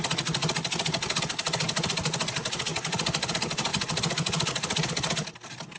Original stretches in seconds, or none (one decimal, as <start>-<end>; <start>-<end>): 0.0-5.8

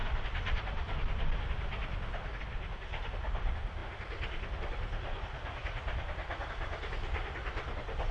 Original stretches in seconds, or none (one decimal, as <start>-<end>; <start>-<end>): 0.0-8.1

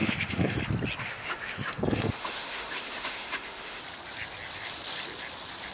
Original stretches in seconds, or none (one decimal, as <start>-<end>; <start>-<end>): 0.6-1.0; 3.8-5.7

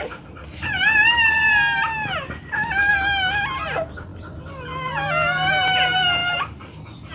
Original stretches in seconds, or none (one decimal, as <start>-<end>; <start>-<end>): 0.0-7.1

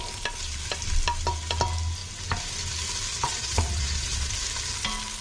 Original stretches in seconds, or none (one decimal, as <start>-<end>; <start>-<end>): 0.0-3.1; 4.3-5.2

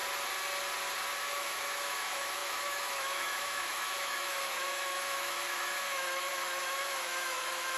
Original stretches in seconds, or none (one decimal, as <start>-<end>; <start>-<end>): 0.0-1.2

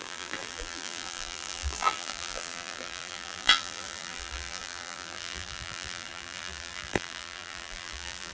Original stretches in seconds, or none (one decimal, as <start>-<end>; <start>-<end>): none